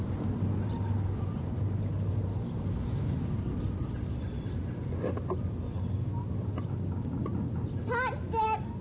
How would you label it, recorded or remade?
recorded